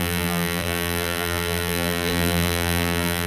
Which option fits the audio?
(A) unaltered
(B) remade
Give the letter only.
B